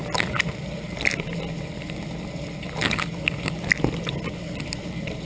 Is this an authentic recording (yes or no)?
yes